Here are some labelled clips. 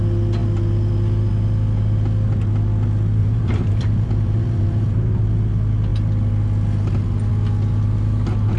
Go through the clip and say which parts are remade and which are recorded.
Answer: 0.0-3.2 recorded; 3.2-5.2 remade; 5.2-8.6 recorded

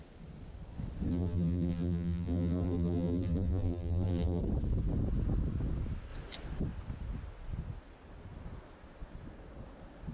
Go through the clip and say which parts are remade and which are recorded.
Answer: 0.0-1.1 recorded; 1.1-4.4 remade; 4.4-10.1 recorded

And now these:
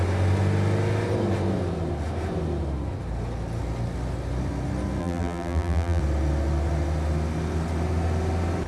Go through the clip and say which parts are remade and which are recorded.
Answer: 0.0-5.0 recorded; 5.0-6.0 remade; 6.0-8.7 recorded

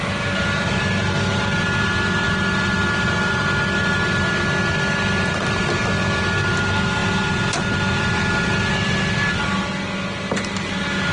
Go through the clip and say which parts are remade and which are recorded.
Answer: 0.0-11.1 recorded

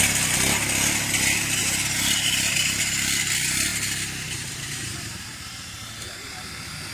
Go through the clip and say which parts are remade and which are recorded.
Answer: 0.0-1.6 recorded; 1.6-2.8 remade; 2.8-3.7 recorded; 3.7-6.3 remade; 6.3-6.9 recorded

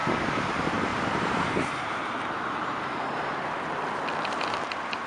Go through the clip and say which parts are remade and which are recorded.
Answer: 0.0-0.5 remade; 0.5-0.9 recorded; 0.9-3.4 remade; 3.4-5.1 recorded

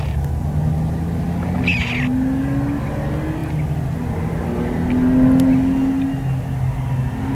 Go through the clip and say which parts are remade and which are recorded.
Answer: 0.0-7.3 recorded